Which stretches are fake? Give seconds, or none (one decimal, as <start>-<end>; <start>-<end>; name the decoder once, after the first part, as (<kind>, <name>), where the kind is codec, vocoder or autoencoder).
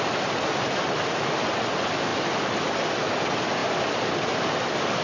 none